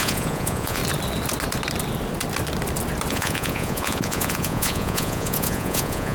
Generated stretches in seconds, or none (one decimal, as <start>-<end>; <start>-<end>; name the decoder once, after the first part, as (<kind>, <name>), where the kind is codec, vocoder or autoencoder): 0.0-0.8 (vocoder, Vocos); 3.1-6.1